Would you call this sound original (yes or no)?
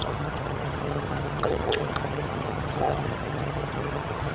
no